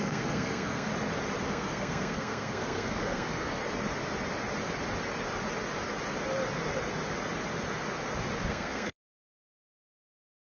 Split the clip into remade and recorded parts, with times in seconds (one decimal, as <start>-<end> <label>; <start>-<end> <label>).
0.0-0.9 remade; 0.9-1.5 recorded; 1.5-3.6 remade; 3.6-8.5 recorded; 8.5-10.4 remade